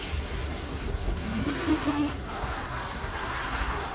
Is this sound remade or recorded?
remade